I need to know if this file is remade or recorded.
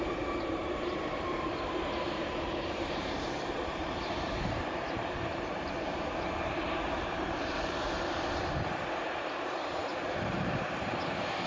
remade